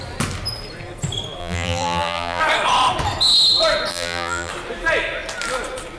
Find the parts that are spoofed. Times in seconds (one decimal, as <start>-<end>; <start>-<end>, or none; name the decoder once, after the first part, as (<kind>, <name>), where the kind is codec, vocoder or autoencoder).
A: 1.4-2.4 (vocoder, BigVGAN v2); 3.9-4.5